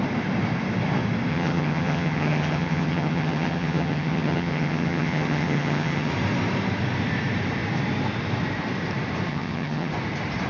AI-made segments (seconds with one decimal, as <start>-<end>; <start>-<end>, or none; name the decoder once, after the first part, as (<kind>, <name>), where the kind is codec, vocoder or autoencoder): 1.3-6.1 (vocoder, HiFi-GAN); 9.3-9.9